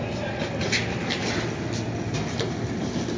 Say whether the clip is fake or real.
real